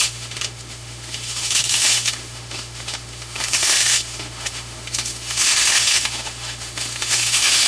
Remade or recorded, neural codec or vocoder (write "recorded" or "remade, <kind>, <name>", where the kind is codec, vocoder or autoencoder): remade, autoencoder, DAC-VAE